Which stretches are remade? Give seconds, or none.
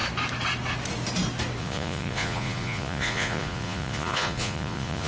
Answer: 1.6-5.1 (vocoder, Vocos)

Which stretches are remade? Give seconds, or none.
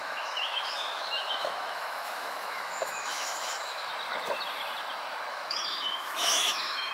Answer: 0.0-3.9 (autoencoder, DAC-VAE); 5.3-6.9